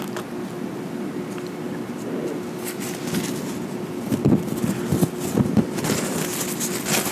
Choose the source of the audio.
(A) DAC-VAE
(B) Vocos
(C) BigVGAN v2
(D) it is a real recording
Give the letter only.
D